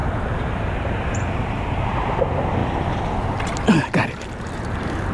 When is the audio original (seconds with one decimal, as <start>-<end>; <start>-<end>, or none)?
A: 2.1-5.1